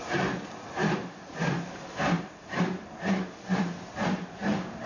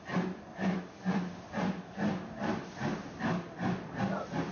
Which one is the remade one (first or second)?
first